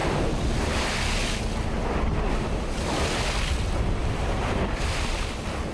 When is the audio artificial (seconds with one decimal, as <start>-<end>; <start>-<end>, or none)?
0.0-1.4; 1.8-3.5; 4.0-5.1